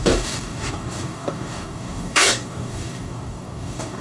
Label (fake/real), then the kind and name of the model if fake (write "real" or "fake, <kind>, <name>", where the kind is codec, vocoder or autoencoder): fake, codec, DAC